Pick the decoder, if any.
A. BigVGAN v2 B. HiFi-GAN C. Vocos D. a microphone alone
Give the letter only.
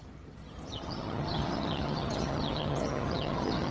B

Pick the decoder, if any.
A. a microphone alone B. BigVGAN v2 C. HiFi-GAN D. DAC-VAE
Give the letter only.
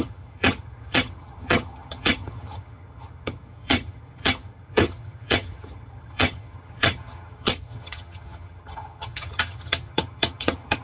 C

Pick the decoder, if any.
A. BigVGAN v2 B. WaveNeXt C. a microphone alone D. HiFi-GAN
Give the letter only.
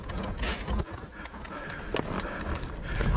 C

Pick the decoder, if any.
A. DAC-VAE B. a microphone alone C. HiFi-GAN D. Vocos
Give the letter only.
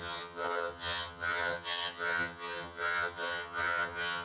C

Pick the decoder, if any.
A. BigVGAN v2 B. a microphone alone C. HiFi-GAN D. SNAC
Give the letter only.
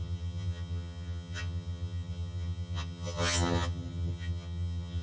C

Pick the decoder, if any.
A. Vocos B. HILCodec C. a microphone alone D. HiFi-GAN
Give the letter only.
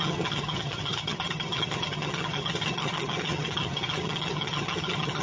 D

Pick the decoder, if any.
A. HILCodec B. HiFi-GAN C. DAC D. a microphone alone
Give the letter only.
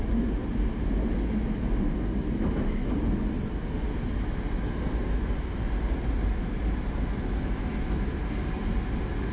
D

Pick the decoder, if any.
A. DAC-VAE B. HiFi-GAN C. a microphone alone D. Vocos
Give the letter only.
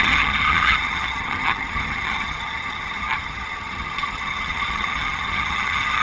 B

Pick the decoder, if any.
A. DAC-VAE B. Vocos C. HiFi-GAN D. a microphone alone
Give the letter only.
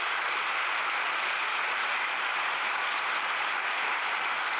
D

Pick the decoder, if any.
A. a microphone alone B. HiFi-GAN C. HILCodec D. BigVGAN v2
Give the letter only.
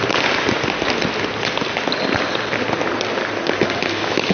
A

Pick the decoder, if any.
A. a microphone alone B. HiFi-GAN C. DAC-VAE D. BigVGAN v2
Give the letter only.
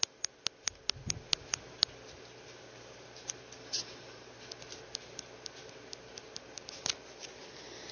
A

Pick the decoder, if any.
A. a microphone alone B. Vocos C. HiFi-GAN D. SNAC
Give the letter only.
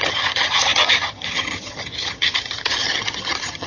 C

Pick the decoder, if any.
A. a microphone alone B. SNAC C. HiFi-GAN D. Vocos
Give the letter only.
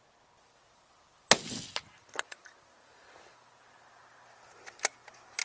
A